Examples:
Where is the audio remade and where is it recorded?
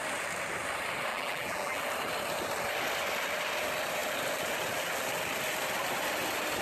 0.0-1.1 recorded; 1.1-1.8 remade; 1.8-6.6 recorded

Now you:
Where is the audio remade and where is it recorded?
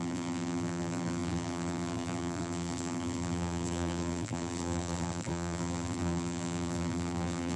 0.0-7.6 remade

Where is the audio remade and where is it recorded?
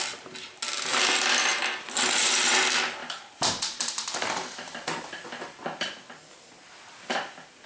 0.0-3.0 recorded; 3.0-7.7 remade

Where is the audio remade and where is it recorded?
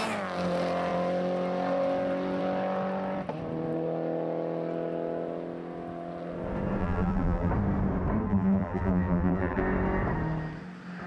0.0-6.8 recorded; 6.8-7.5 remade; 7.5-8.2 recorded; 8.2-9.6 remade; 9.6-11.1 recorded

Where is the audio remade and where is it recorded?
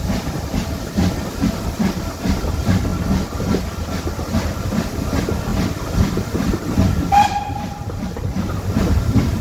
0.0-5.5 recorded; 5.5-8.3 remade; 8.3-9.4 recorded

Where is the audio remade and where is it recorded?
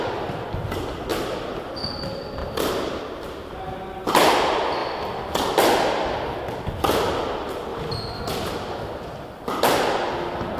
0.0-1.1 recorded; 1.1-1.7 remade; 1.7-2.4 recorded; 2.4-3.0 remade; 3.0-4.8 recorded; 4.8-6.4 remade; 6.4-7.7 recorded; 7.7-8.5 remade; 8.5-10.6 recorded